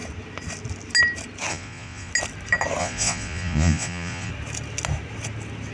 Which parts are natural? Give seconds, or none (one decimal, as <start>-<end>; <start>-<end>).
0.0-1.5; 2.1-2.8; 4.3-5.7